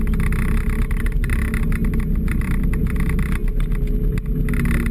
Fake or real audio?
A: real